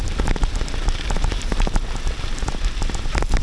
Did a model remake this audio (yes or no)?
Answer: no